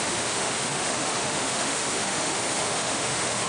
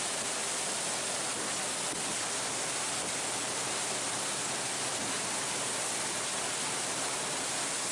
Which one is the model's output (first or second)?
first